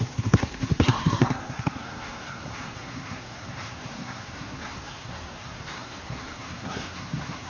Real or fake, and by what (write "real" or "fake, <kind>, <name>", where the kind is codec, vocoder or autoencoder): fake, codec, SNAC